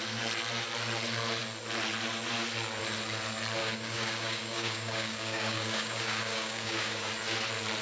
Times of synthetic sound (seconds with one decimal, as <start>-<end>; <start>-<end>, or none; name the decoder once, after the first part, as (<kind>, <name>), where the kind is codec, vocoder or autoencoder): 3.6-7.1 (codec, DAC)